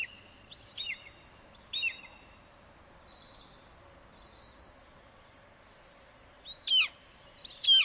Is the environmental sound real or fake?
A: real